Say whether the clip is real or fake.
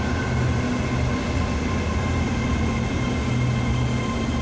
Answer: real